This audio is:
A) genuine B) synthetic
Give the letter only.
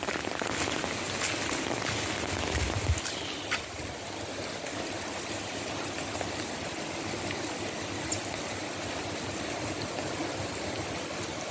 A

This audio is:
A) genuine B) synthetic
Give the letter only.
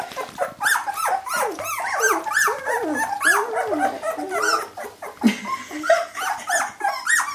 A